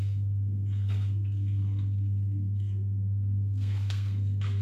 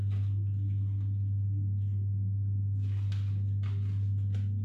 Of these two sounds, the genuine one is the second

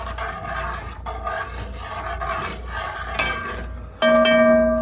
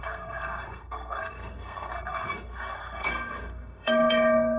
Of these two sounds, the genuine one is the first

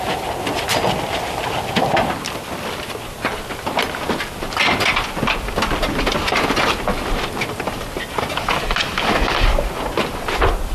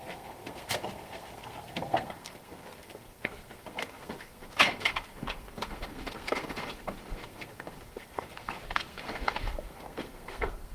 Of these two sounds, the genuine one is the first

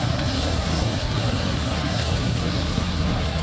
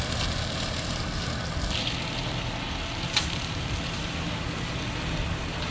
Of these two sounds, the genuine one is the second